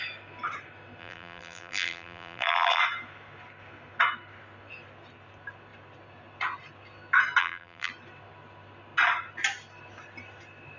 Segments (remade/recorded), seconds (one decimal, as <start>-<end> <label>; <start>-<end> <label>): 0.0-1.0 recorded; 1.0-2.8 remade; 2.8-7.4 recorded; 7.4-7.9 remade; 7.9-10.8 recorded